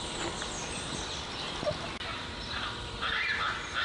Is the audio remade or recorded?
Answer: recorded